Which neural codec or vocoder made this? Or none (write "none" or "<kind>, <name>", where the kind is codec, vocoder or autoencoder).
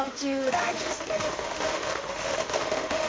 autoencoder, DAC-VAE